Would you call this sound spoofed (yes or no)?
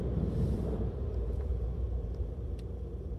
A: yes